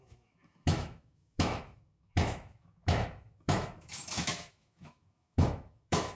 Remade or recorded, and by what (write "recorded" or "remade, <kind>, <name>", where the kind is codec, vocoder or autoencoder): remade, autoencoder, DAC-VAE